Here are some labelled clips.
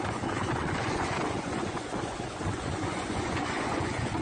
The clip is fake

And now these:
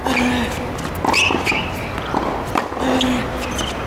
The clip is real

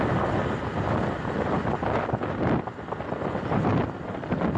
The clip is real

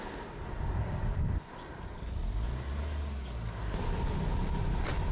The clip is real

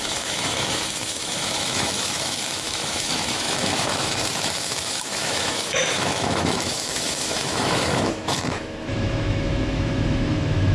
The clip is fake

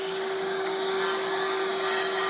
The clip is fake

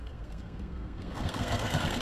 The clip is fake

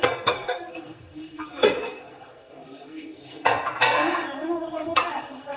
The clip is fake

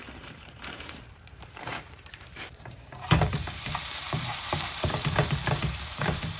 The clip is fake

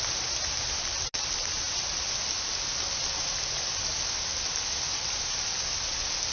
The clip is real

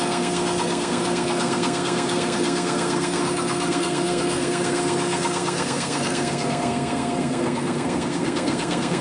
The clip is fake